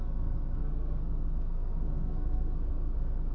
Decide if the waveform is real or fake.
fake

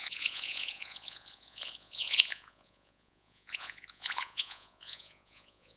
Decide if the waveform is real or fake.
fake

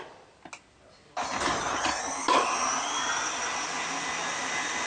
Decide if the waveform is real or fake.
real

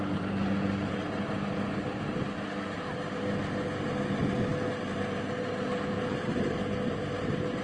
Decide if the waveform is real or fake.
real